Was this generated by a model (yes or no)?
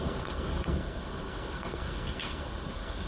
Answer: yes